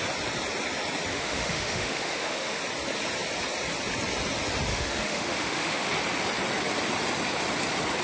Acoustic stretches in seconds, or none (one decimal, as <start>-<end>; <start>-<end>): 0.0-1.1; 2.6-4.7; 5.9-8.0